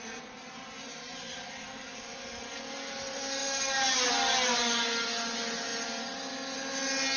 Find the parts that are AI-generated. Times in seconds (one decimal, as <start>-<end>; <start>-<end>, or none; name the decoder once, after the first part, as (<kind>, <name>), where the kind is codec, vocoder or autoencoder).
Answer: 0.0-5.7 (vocoder, BigVGAN v2)